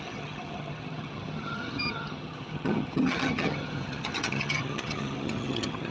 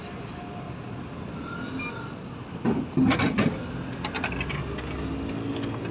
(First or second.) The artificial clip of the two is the first